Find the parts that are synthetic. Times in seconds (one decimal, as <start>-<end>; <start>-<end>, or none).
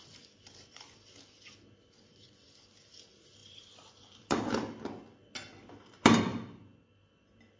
3.4-4.4